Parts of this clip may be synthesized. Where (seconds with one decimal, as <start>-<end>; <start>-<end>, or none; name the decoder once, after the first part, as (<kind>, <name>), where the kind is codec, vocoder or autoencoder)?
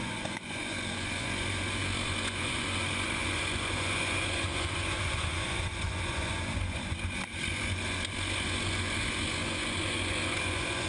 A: 0.0-10.9 (vocoder, Vocos)